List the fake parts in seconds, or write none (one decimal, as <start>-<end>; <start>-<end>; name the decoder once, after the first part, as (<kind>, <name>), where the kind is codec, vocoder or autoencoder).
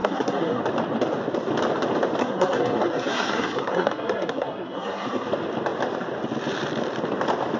0.0-0.6 (codec, SNAC); 2.2-5.3